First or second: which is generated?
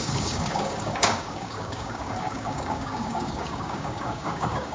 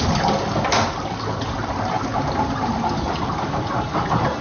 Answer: first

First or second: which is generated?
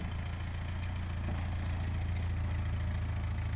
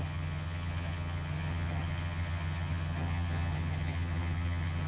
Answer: second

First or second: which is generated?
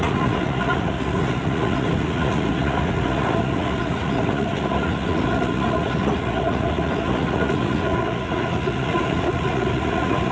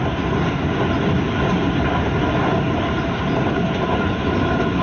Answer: first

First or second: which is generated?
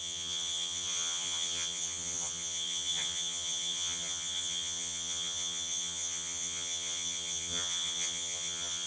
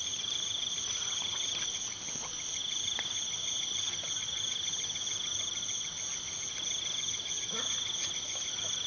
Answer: first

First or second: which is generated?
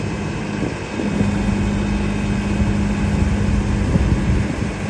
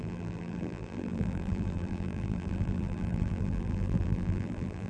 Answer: second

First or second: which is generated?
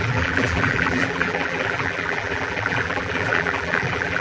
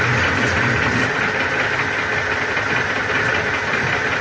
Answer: first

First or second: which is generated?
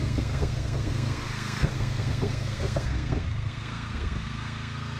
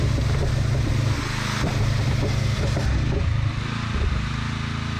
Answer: first